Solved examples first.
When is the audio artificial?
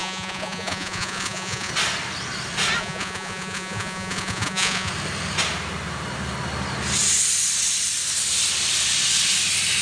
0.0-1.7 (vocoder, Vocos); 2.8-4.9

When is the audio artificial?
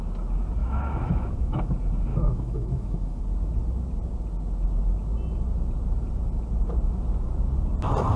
0.6-1.7 (autoencoder, DAC-VAE); 2.1-3.2